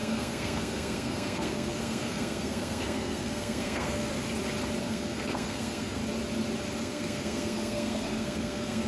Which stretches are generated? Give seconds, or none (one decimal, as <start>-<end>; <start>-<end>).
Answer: 0.0-4.1; 4.8-6.0; 6.8-8.9